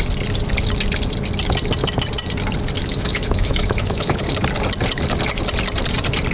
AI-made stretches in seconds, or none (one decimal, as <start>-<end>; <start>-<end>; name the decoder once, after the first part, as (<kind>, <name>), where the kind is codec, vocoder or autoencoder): 2.8-4.2 (autoencoder, DAC-VAE)